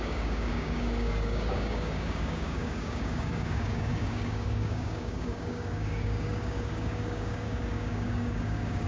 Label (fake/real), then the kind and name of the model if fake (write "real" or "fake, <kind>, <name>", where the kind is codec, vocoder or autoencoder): fake, codec, DAC